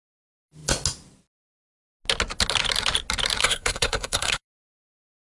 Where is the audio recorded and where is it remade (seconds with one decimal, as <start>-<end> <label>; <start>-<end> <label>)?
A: 0.0-3.4 recorded; 3.4-4.4 remade; 4.4-5.4 recorded